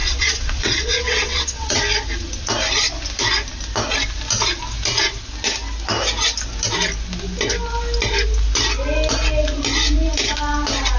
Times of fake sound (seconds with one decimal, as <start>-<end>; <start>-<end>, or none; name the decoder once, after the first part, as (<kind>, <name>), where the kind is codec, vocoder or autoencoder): 0.0-1.8 (vocoder, WaveNeXt)